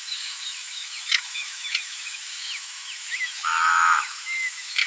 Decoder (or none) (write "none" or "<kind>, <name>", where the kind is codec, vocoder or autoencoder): autoencoder, DAC-VAE